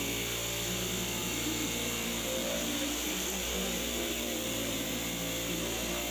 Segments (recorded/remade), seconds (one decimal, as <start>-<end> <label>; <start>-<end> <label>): 0.0-1.2 recorded; 1.2-4.9 remade; 4.9-6.1 recorded